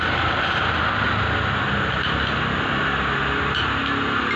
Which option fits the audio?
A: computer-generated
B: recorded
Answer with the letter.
B